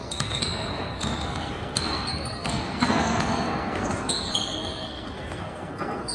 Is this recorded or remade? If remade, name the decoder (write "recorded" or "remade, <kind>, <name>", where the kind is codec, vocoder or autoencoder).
remade, codec, SNAC